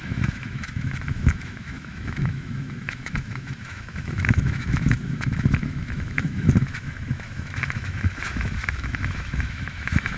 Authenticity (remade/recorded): remade